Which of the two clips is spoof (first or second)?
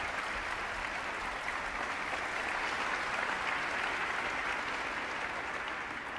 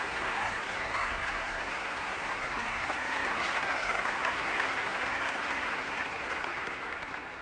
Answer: second